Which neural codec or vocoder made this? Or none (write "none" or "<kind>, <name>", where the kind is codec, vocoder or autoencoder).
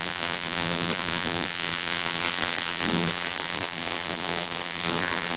vocoder, BigVGAN v2